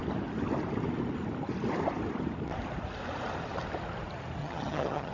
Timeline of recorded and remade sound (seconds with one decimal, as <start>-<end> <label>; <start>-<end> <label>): 0.0-4.4 recorded; 4.4-5.1 remade

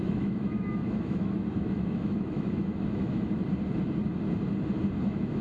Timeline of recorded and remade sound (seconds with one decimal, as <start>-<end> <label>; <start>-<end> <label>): 0.0-3.4 remade; 3.4-5.0 recorded; 5.0-5.4 remade

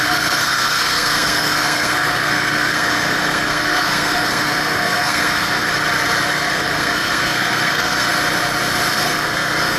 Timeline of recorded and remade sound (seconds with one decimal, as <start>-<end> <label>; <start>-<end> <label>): 0.0-5.7 remade; 5.7-6.3 recorded; 6.3-8.2 remade; 8.2-8.9 recorded; 8.9-9.8 remade

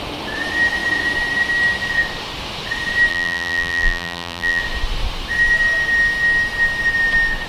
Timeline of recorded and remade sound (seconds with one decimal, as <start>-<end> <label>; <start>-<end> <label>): 0.0-3.1 recorded; 3.1-4.6 remade; 4.6-7.5 recorded

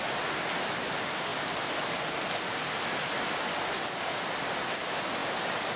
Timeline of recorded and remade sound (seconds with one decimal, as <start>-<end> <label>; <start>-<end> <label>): 0.0-5.8 recorded

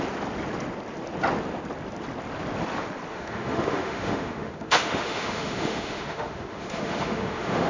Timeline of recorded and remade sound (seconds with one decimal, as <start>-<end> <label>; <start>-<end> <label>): 0.0-3.1 recorded; 3.1-7.7 remade

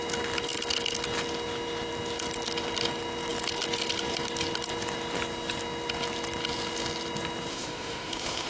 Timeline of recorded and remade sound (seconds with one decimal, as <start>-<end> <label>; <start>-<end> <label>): 0.0-7.5 recorded; 7.5-8.5 remade